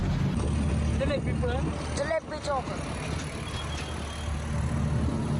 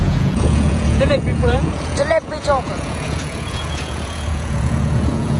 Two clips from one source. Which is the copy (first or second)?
second